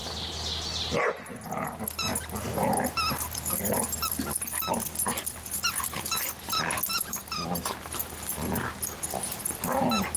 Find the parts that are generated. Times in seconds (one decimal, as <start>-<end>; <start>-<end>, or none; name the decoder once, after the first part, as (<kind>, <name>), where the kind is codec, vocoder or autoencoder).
none